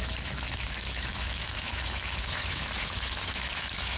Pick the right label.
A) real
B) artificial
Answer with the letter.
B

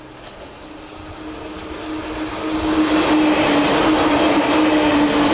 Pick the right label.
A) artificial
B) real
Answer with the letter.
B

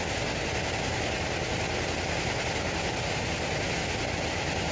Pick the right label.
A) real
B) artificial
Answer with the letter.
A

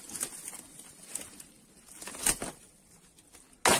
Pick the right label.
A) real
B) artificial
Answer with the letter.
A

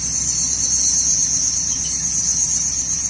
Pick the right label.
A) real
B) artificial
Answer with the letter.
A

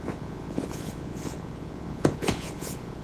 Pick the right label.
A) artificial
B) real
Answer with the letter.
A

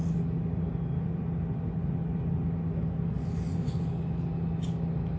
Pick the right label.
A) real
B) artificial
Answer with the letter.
A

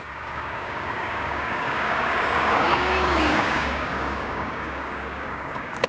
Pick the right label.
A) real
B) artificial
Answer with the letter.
B